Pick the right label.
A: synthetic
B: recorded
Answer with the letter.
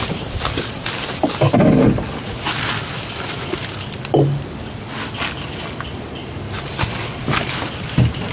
B